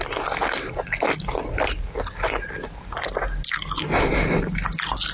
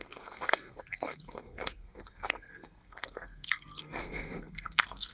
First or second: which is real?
first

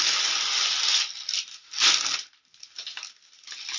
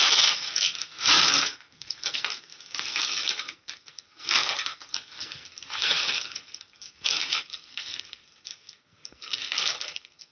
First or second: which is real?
first